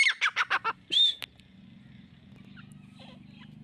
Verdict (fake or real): real